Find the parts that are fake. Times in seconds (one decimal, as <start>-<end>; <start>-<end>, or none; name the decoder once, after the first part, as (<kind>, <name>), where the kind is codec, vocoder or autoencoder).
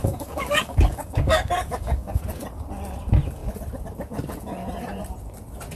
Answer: 0.0-2.2 (codec, DAC)